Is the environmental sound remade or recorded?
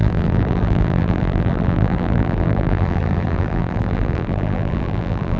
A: remade